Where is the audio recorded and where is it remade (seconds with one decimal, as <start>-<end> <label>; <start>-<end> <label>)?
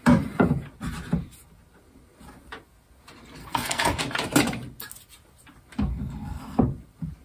0.0-3.4 recorded; 3.4-4.0 remade; 4.0-5.9 recorded; 5.9-6.6 remade; 6.6-7.2 recorded